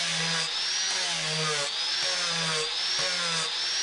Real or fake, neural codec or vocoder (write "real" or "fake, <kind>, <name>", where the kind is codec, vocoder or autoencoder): real